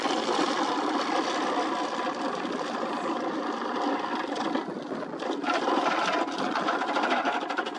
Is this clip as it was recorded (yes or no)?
yes